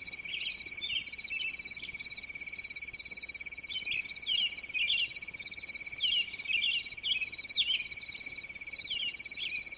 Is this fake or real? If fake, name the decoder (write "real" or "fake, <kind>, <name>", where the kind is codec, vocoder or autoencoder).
real